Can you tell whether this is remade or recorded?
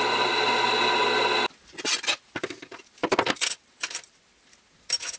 recorded